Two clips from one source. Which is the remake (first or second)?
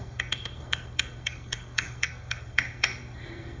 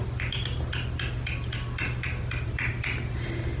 first